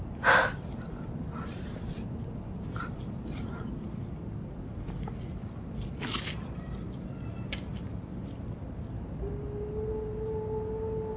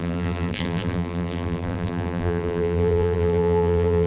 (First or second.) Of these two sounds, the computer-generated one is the second